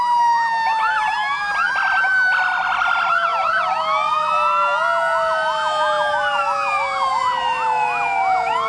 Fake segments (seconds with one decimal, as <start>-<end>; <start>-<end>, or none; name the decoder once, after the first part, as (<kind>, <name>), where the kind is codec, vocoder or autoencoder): none